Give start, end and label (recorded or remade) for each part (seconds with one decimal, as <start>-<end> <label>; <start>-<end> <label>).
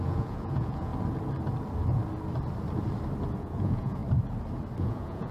0.0-0.9 remade; 0.9-3.4 recorded; 3.4-4.0 remade; 4.0-4.8 recorded; 4.8-5.3 remade